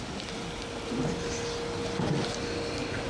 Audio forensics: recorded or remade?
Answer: recorded